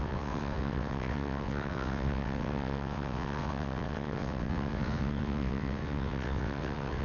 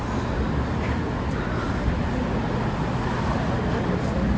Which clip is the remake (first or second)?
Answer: first